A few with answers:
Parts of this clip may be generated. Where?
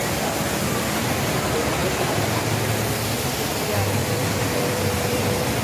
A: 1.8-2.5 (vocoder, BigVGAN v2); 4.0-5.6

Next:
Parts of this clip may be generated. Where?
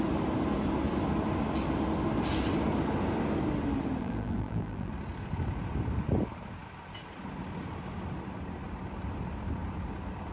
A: 4.0-4.9 (vocoder, BigVGAN v2)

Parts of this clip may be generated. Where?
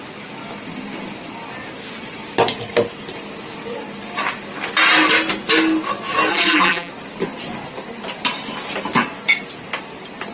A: 6.3-6.9 (vocoder, BigVGAN v2)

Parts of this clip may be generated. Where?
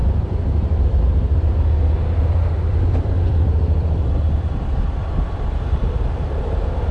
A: 0.0-6.9 (vocoder, BigVGAN v2)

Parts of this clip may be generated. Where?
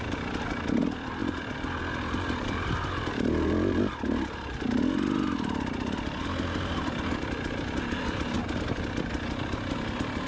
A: none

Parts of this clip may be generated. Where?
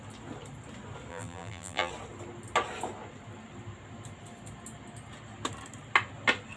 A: 1.1-1.9 (vocoder, BigVGAN v2)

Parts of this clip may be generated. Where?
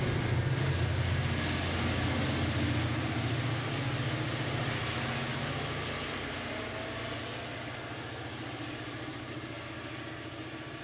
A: 9.1-9.7 (vocoder, BigVGAN v2)